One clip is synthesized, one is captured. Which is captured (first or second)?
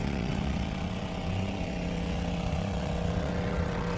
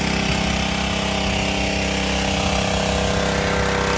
second